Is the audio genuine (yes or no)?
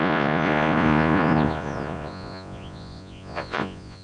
no